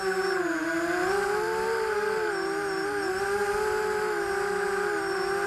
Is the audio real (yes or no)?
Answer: yes